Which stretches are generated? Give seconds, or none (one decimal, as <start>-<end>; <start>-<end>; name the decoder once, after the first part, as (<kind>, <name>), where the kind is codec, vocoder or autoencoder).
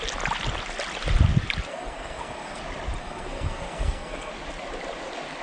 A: 1.7-2.6 (codec, SNAC); 3.0-4.3